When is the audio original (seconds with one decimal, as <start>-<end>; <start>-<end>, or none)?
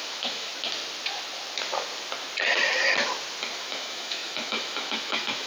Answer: 0.5-3.6